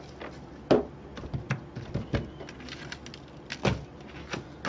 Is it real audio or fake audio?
real